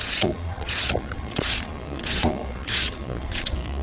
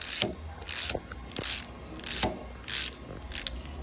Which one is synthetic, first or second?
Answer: first